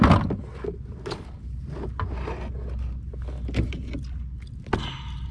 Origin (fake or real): real